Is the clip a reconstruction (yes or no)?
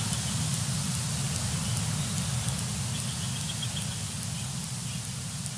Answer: no